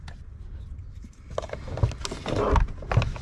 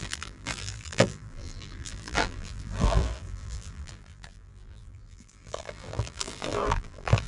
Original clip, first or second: first